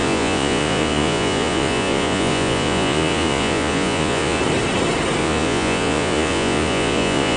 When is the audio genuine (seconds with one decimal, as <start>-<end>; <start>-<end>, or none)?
4.4-5.2